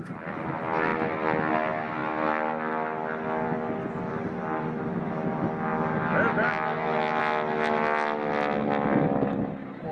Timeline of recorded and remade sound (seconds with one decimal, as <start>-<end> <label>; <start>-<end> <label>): 0.0-9.9 recorded